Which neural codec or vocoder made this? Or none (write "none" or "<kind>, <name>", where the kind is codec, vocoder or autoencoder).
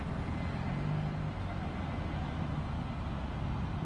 none